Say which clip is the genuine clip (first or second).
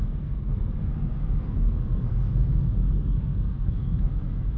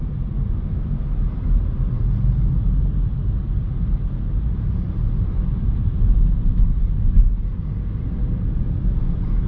second